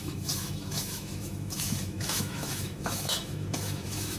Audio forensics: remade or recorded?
remade